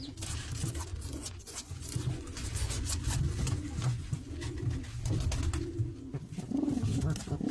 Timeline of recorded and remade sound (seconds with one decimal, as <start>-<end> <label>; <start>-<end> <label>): 0.0-0.9 recorded; 0.9-4.3 remade; 4.3-7.5 recorded